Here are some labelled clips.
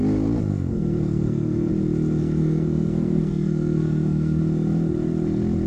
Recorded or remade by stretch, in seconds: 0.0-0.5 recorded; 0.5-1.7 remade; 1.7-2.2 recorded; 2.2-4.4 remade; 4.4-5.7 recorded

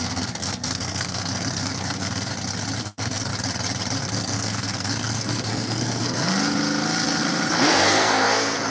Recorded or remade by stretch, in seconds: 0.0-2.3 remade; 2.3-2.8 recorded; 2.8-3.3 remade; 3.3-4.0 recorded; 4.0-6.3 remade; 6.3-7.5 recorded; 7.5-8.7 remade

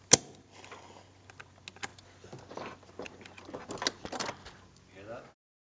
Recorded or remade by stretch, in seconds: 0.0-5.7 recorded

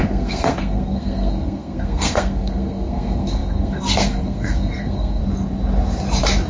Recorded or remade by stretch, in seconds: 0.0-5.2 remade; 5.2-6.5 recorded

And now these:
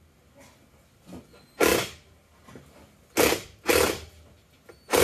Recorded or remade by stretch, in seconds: 0.0-5.0 recorded